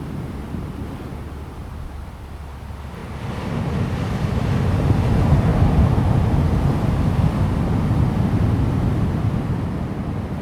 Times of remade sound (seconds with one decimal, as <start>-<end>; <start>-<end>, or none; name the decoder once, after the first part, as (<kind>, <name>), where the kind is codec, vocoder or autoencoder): none